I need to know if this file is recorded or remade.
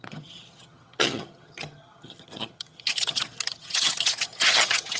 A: remade